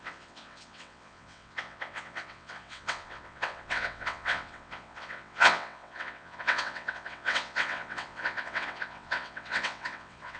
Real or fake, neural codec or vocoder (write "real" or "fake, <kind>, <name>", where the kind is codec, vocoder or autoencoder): fake, vocoder, WaveNeXt